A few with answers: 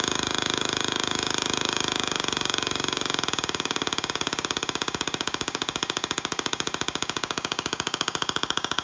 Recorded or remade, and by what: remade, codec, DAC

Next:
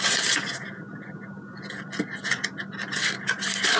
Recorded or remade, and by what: recorded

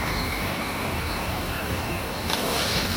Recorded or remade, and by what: remade, codec, DAC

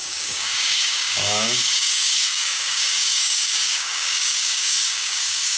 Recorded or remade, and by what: remade, codec, DAC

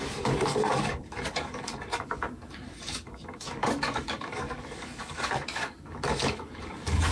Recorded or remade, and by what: remade, codec, DAC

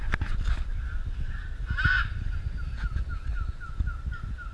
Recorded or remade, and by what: recorded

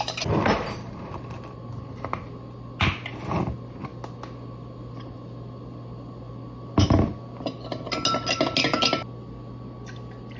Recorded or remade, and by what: recorded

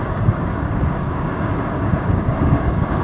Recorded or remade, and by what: remade, codec, DAC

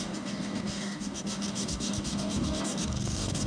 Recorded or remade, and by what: remade, codec, DAC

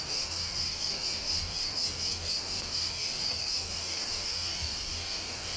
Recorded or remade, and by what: remade, codec, DAC